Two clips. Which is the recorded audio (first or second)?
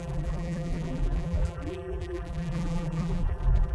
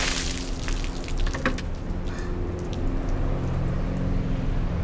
second